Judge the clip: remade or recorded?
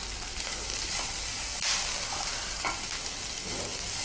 recorded